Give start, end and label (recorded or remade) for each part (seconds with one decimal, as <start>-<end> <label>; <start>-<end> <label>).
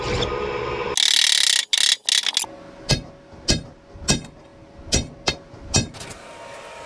0.0-6.9 recorded